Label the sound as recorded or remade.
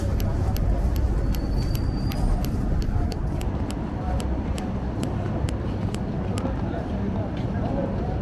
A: recorded